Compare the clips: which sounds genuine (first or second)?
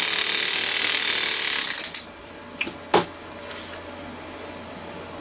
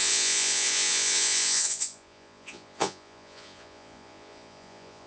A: first